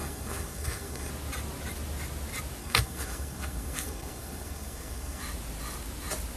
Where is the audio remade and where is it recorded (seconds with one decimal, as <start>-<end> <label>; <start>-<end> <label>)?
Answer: 0.0-1.1 remade; 1.1-2.6 recorded; 2.6-5.2 remade; 5.2-6.4 recorded